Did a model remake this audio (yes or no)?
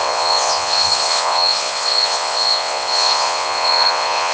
yes